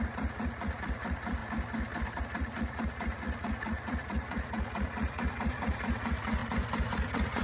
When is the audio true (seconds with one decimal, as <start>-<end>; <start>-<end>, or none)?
1.4-2.2; 6.4-6.9